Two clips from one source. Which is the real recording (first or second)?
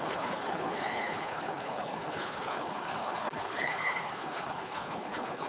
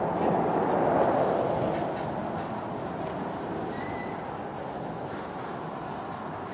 second